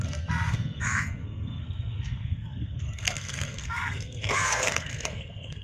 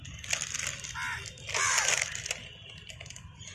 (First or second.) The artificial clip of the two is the first